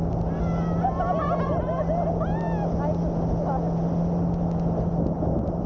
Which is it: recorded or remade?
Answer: recorded